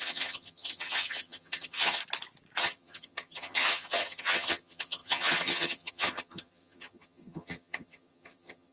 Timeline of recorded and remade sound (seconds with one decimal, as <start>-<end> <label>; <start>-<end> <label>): 0.0-2.0 remade; 2.0-2.6 recorded; 2.6-8.7 remade